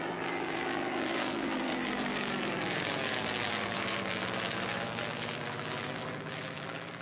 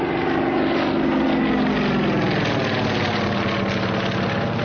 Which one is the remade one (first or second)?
first